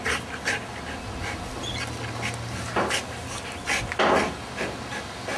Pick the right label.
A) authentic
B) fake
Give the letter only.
A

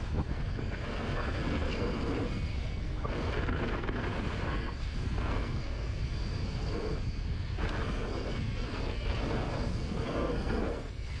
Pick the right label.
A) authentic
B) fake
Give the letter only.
B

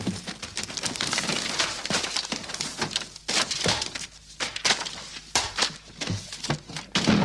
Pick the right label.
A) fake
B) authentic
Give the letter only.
B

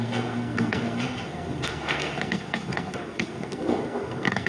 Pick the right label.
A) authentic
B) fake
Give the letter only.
B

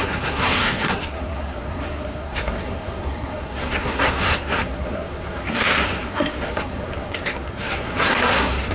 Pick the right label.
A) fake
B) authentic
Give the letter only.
A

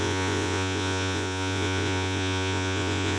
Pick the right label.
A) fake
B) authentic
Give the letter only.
A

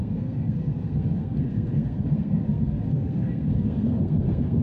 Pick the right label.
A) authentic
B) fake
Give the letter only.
B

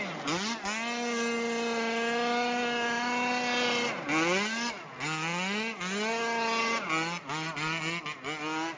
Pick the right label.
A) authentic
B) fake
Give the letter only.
A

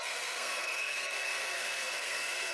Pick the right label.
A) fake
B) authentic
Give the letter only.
A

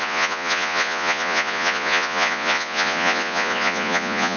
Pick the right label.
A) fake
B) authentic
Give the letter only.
A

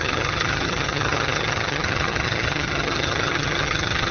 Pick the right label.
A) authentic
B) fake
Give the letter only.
B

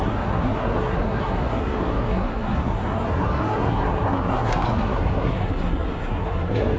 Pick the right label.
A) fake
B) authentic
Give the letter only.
A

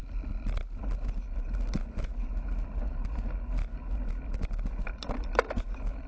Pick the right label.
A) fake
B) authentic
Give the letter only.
B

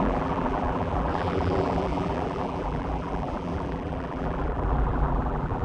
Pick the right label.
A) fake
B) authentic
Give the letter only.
A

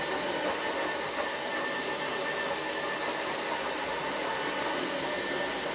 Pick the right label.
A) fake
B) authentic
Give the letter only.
B